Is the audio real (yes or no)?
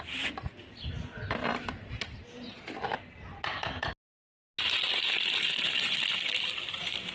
yes